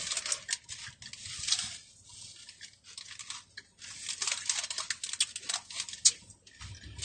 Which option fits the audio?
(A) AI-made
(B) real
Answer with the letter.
B